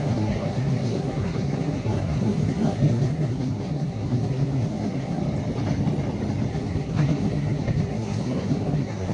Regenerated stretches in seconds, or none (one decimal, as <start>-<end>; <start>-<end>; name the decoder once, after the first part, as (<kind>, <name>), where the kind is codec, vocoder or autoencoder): 0.0-5.2 (codec, SNAC); 6.5-9.1